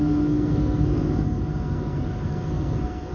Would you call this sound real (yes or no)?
no